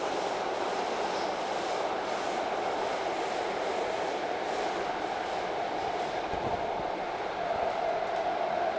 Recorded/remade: recorded